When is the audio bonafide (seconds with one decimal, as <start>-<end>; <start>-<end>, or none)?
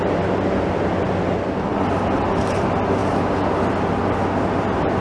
0.0-5.0